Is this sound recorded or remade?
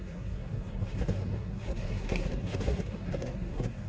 remade